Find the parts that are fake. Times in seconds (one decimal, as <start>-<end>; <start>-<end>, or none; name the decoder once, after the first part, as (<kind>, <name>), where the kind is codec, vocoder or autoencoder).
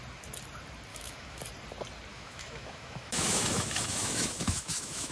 0.9-1.4 (autoencoder, DAC-VAE); 2.1-5.1